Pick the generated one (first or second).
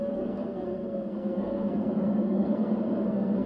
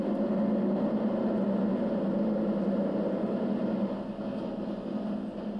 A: first